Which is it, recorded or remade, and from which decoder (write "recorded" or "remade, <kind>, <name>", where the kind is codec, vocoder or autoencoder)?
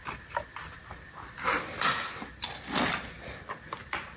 recorded